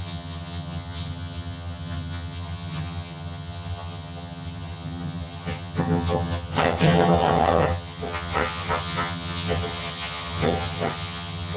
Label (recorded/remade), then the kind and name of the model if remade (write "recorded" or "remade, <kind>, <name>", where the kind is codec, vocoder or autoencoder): remade, vocoder, HiFi-GAN